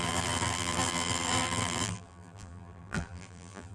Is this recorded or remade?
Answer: remade